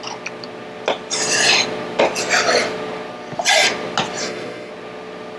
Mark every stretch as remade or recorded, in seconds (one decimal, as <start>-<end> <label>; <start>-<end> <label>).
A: 0.0-4.2 recorded; 4.2-4.7 remade; 4.7-5.4 recorded